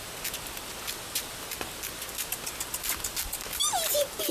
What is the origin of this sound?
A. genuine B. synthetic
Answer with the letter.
A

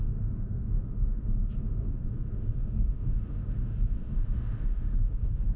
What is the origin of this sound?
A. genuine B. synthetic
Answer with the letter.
B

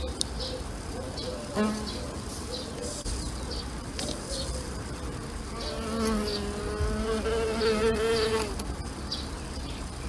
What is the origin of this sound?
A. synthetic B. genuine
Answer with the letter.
B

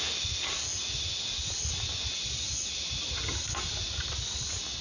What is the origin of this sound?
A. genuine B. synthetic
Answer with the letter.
A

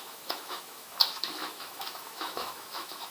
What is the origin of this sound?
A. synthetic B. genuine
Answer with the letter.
A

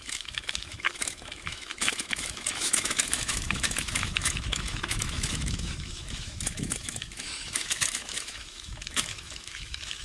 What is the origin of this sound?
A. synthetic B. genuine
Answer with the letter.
A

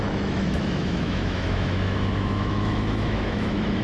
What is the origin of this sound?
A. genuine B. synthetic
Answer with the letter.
B